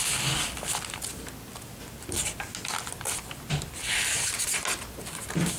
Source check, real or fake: real